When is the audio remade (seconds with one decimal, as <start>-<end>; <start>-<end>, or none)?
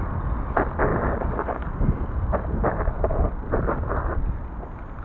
none